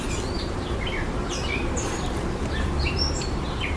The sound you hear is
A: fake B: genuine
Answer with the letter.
A